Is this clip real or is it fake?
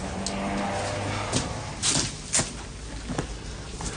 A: real